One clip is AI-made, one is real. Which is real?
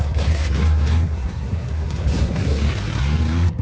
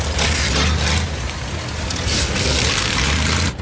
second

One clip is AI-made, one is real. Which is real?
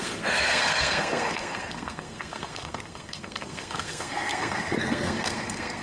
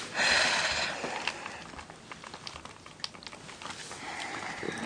second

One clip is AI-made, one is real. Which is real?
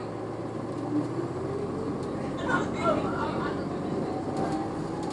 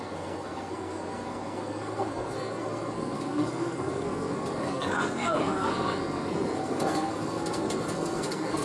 first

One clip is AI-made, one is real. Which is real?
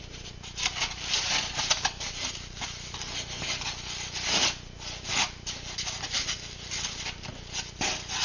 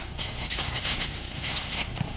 first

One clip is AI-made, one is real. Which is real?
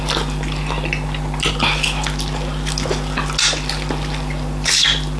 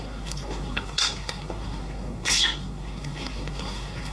first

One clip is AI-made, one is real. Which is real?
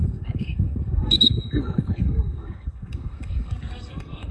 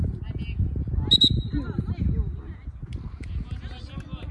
second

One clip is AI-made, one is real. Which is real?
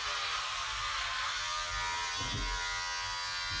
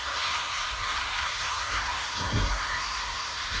first